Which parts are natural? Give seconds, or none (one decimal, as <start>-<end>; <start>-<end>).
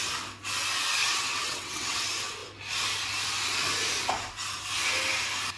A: 0.0-1.0; 2.0-5.6